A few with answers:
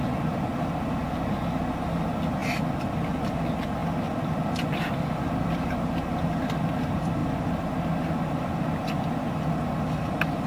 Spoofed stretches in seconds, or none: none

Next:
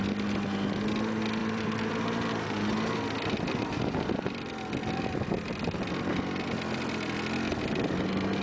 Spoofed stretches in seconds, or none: 1.4-2.3 (vocoder, BigVGAN v2)

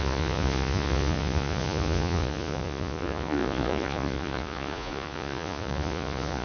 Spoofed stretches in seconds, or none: 0.0-6.4 (vocoder, Vocos)

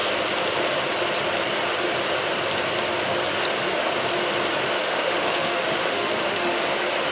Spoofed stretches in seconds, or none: 4.8-6.6 (autoencoder, DAC-VAE)

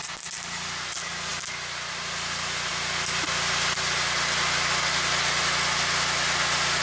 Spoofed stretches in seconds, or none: none

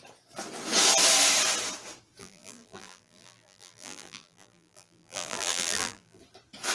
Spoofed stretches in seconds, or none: 2.2-6.2 (vocoder, BigVGAN v2)

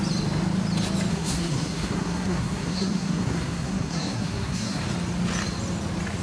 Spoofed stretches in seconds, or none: 1.1-4.8 (codec, SNAC)